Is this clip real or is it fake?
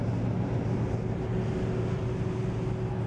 real